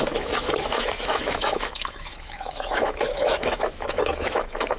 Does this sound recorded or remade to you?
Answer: remade